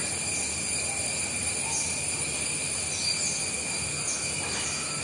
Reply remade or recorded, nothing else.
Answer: recorded